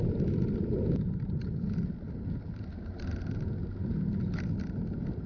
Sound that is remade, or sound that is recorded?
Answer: recorded